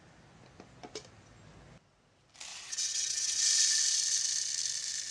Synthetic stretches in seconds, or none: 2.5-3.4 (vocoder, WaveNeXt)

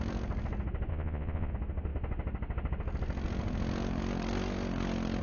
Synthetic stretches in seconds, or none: 0.9-1.5 (vocoder, Vocos)